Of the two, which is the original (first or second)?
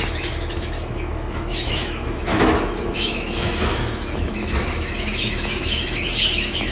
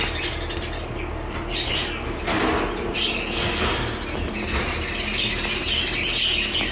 second